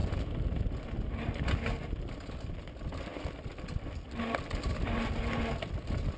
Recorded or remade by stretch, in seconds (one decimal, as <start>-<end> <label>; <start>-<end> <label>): 0.0-6.2 recorded